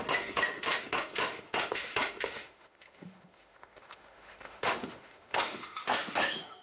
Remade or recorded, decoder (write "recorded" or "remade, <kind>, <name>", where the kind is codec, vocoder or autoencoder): remade, autoencoder, DAC-VAE